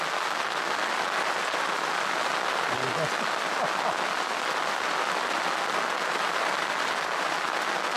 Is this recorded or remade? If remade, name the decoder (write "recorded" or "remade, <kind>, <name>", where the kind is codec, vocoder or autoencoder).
recorded